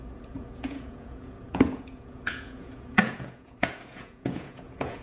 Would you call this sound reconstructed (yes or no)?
yes